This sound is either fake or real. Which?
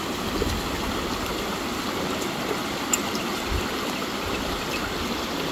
real